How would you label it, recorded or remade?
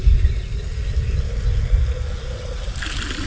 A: recorded